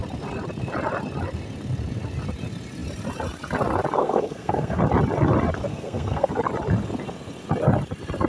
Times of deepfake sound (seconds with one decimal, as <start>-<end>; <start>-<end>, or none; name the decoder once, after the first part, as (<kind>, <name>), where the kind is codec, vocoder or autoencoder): 4.0-4.8 (codec, SNAC); 5.7-6.3

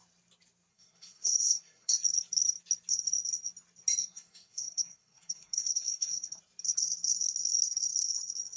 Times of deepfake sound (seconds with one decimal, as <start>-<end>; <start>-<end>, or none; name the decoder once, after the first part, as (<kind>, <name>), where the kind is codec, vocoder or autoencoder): 0.7-1.9 (codec, SNAC); 4.0-6.4